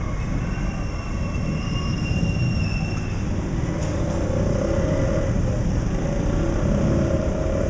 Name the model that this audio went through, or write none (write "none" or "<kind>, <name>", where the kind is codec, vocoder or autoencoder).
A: none